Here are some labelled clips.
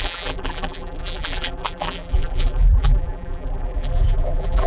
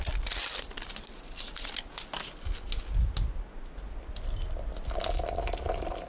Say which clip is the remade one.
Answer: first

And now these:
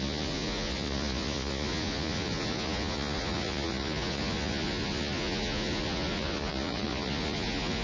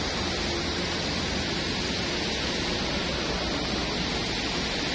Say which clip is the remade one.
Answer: first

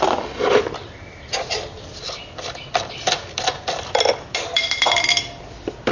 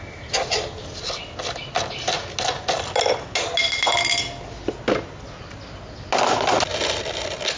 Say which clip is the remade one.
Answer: first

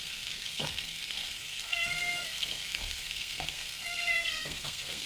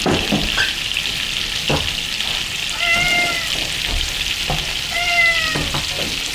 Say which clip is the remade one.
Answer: first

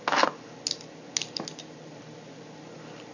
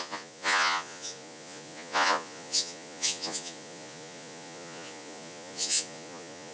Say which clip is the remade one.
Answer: second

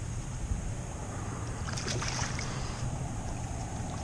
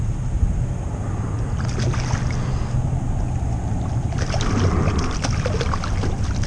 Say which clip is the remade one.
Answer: first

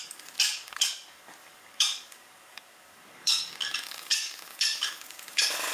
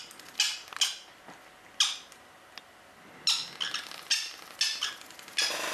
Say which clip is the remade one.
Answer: first